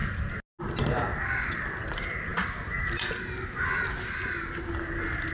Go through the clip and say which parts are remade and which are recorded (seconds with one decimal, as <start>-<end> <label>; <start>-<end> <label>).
0.0-5.3 recorded